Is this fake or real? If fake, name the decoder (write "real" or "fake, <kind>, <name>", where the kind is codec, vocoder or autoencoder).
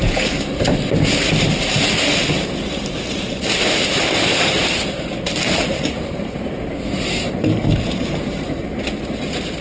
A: fake, vocoder, BigVGAN v2